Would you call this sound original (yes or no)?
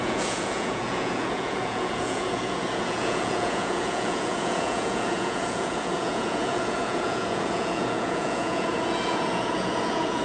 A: no